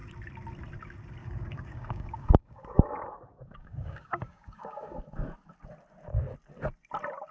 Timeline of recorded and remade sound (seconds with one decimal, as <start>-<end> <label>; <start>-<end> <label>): 0.0-1.2 recorded; 1.2-5.0 remade; 5.0-7.3 recorded